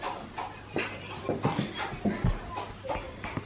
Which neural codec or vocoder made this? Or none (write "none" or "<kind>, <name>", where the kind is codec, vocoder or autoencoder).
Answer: none